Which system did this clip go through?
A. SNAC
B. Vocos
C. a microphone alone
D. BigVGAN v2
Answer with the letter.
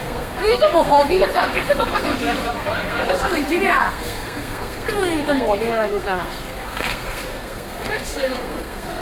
A